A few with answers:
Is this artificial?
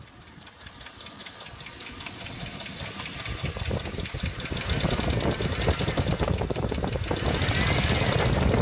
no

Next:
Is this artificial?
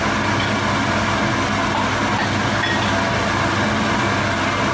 no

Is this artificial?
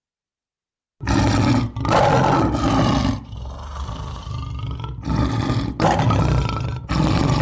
no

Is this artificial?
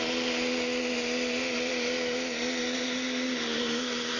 no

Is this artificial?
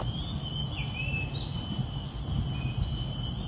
no